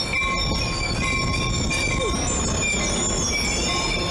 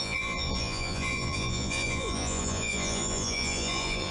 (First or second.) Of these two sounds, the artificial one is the second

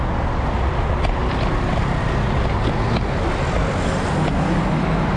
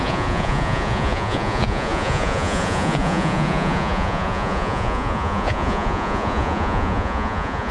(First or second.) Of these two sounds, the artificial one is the second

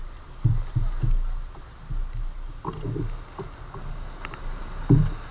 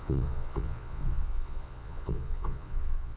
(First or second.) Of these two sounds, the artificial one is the second